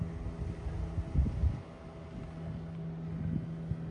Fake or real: real